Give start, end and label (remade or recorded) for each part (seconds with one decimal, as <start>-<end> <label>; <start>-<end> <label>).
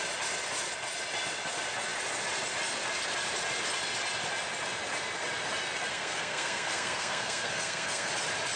0.0-5.9 recorded; 5.9-8.1 remade; 8.1-8.6 recorded